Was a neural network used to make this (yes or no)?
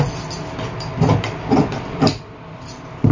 no